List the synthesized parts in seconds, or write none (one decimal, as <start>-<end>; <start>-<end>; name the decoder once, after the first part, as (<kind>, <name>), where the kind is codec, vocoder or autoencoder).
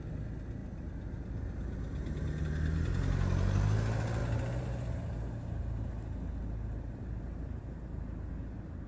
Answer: none